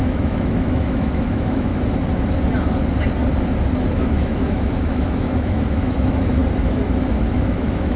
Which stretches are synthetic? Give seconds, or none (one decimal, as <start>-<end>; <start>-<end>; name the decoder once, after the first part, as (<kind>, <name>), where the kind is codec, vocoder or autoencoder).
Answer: 0.0-1.7 (autoencoder, DAC-VAE); 3.9-6.4; 7.3-8.0